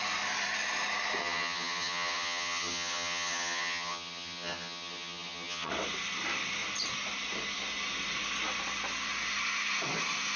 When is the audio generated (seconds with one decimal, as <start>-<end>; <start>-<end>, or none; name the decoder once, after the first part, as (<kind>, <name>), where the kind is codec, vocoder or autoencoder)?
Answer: 1.2-5.7 (vocoder, HiFi-GAN)